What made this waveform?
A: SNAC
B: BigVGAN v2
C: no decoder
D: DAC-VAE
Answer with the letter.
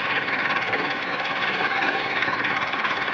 A